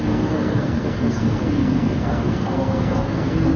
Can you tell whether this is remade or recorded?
remade